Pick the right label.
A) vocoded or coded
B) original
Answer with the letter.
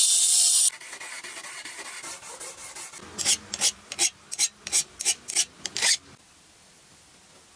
B